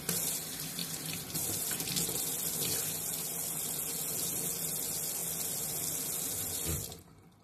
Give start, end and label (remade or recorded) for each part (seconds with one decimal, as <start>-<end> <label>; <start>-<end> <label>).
0.0-7.4 recorded